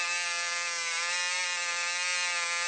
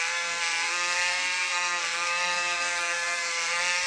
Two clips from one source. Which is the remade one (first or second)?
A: second